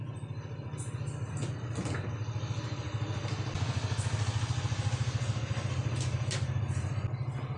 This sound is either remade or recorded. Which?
recorded